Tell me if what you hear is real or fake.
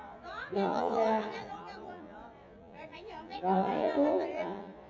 fake